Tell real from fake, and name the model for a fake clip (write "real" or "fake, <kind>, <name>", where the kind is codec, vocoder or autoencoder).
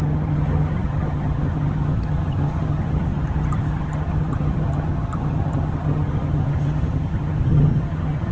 fake, vocoder, HiFi-GAN